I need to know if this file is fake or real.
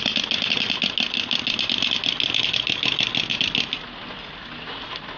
real